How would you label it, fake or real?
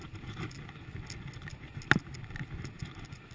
real